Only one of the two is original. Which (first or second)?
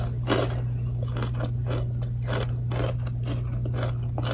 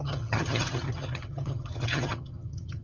first